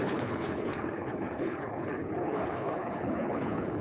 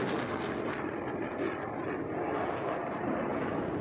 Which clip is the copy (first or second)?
first